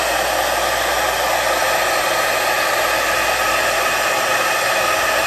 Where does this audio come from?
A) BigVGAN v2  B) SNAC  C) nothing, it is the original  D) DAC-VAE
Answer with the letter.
C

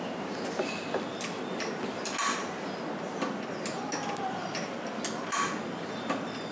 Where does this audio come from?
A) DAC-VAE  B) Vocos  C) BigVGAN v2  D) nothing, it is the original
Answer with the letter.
D